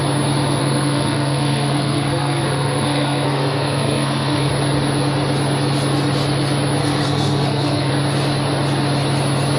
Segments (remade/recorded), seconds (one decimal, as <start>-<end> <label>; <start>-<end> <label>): 0.0-0.6 recorded; 0.6-4.5 remade; 4.5-6.8 recorded; 6.8-7.9 remade; 7.9-9.6 recorded

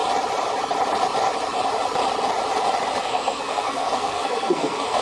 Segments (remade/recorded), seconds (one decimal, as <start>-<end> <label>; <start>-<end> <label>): 0.0-3.0 recorded; 3.0-5.0 remade

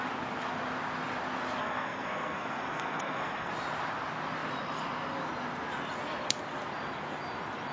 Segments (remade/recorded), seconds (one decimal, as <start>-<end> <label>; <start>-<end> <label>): 0.0-1.6 recorded; 1.6-3.5 remade; 3.5-7.7 recorded

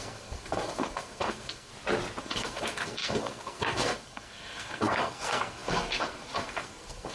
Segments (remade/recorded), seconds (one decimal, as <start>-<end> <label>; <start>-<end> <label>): 0.0-1.7 remade; 1.7-2.2 recorded; 2.2-7.1 remade

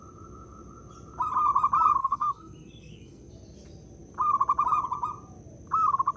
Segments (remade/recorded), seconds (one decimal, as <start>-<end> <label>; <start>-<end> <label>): 0.0-2.0 recorded; 2.0-3.3 remade; 3.3-6.2 recorded

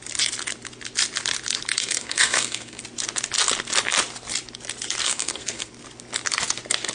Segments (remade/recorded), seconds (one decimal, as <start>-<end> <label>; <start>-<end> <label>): 0.0-1.8 recorded; 1.8-2.8 remade; 2.8-5.0 recorded; 5.0-5.7 remade; 5.7-6.9 recorded